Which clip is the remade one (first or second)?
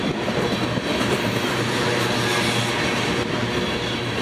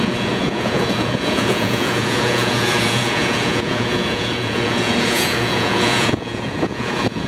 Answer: second